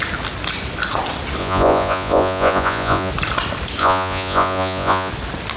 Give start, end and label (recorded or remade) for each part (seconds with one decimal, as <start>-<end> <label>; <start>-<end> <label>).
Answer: 0.0-1.4 recorded; 1.4-3.1 remade; 3.1-3.8 recorded; 3.8-5.1 remade; 5.1-5.6 recorded